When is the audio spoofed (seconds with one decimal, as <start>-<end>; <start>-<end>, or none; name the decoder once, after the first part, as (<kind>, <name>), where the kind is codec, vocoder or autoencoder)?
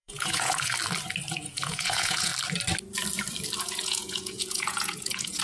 0.0-0.7 (vocoder, Vocos); 1.3-2.3; 3.6-5.4